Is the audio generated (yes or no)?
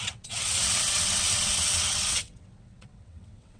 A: yes